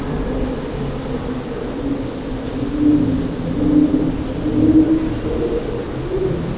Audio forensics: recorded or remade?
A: recorded